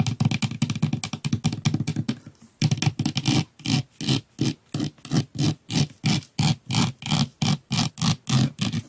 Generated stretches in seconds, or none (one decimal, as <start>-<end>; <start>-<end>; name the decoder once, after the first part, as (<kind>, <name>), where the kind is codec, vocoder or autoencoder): 1.9-2.5 (vocoder, BigVGAN v2); 5.3-6.0; 7.3-7.9